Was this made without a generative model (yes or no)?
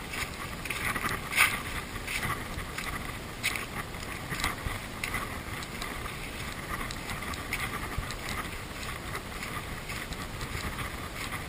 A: yes